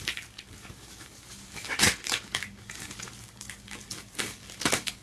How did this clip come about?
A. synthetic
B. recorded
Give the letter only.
A